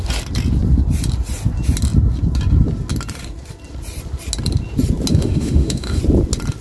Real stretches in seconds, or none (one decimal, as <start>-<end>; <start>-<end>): 0.0-5.1; 6.0-6.6